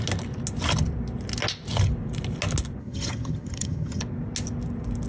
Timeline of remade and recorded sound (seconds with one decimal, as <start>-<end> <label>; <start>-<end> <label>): 0.0-2.8 recorded; 2.8-4.0 remade; 4.0-5.1 recorded